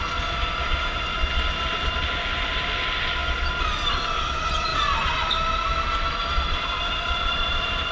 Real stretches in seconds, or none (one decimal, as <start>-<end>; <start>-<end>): 0.0-7.9